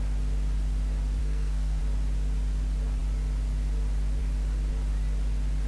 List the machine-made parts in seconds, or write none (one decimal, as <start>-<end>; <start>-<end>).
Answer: 1.2-1.8